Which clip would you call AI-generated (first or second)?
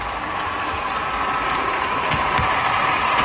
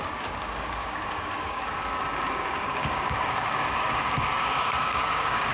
second